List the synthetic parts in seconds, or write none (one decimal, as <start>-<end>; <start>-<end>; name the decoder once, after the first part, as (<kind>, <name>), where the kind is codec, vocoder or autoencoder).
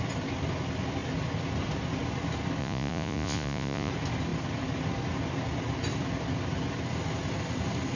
2.6-3.9 (vocoder, Vocos)